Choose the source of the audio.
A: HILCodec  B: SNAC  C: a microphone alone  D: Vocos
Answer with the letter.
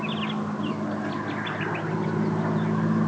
C